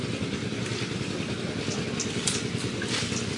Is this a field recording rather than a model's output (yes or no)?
yes